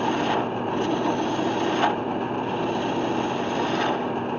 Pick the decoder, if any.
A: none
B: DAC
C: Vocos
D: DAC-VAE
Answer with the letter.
A